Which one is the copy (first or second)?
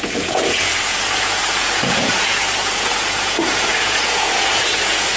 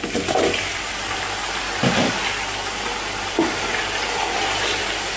first